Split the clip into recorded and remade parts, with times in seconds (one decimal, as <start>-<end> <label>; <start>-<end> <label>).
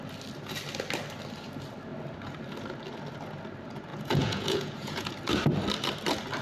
0.0-3.9 recorded; 3.9-5.1 remade; 5.1-6.4 recorded